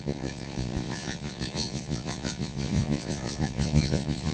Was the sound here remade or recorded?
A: remade